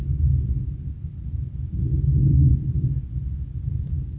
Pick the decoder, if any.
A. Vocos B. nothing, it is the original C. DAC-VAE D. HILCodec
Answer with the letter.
B